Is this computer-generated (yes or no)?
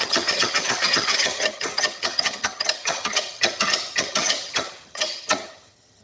yes